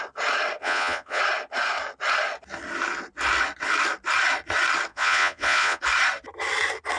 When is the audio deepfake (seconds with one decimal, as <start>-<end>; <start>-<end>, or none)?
0.6-1.2; 4.9-5.8